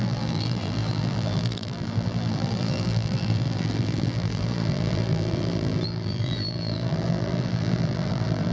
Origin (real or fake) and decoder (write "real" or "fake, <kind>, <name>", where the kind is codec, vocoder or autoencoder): fake, vocoder, BigVGAN v2